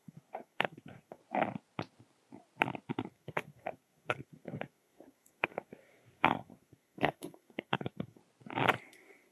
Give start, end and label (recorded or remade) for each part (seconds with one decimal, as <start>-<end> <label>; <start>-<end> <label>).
0.0-1.2 remade; 1.2-3.1 recorded; 3.1-8.2 remade; 8.2-8.8 recorded; 8.8-9.3 remade